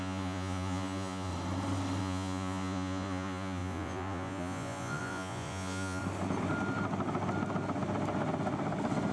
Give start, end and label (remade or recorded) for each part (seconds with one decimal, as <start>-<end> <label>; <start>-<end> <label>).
0.0-1.3 remade; 1.3-2.0 recorded; 2.0-6.0 remade; 6.0-9.1 recorded